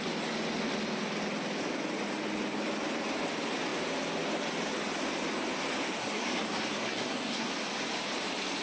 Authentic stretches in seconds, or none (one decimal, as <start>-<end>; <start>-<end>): 0.0-6.0; 7.5-8.6